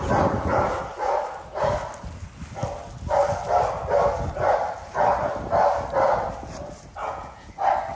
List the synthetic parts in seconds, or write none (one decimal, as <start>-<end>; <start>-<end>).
7.0-7.5